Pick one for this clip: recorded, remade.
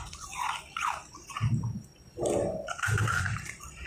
remade